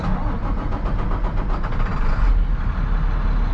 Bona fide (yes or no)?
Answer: yes